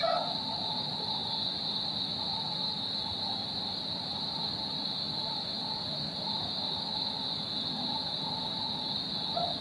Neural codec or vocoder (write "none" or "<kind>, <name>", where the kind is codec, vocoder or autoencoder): none